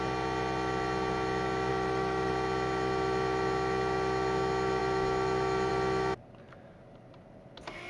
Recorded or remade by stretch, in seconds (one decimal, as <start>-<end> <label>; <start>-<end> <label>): 0.0-1.7 recorded; 1.7-2.3 remade; 2.3-7.9 recorded